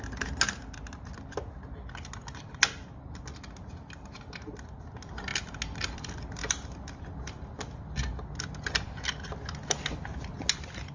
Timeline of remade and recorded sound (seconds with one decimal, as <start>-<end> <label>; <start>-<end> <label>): 0.0-6.4 recorded; 6.4-7.0 remade; 7.0-10.9 recorded